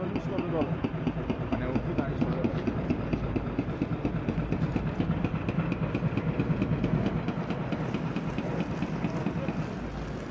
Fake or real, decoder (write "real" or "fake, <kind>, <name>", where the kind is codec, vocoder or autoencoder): real